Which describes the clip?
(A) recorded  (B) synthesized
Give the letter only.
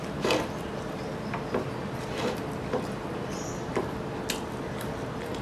A